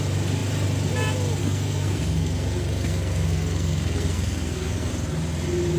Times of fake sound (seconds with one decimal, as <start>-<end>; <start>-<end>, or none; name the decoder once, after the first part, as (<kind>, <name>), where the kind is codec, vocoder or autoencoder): 1.4-4.9 (codec, SNAC)